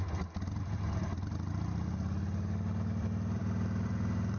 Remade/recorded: recorded